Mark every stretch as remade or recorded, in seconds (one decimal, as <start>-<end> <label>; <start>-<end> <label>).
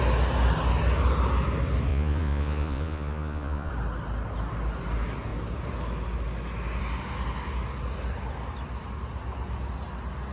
0.0-1.9 recorded; 1.9-3.7 remade; 3.7-10.3 recorded